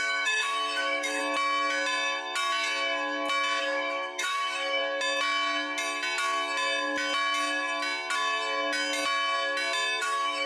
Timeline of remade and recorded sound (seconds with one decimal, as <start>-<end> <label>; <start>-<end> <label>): 0.0-1.2 remade; 1.2-3.6 recorded; 3.6-4.8 remade; 4.8-10.0 recorded; 10.0-10.5 remade